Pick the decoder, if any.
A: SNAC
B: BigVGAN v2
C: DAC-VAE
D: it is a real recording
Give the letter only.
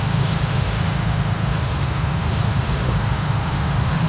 C